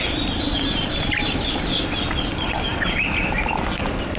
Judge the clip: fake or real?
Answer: fake